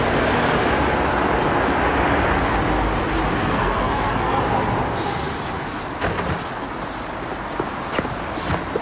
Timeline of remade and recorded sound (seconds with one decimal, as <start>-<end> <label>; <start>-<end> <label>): 0.0-3.4 recorded; 3.4-4.4 remade; 4.4-8.8 recorded